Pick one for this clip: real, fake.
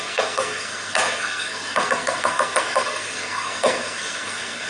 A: fake